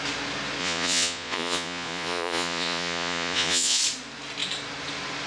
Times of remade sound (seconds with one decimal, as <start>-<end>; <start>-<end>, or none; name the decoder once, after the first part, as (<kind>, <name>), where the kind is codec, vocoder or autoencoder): 0.6-3.8 (vocoder, Vocos)